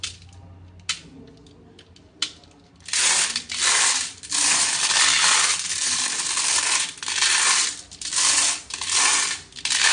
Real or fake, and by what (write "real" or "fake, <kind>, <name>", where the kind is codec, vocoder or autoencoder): real